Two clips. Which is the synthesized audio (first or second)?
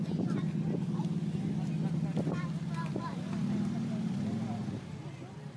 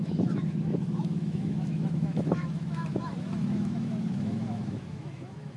second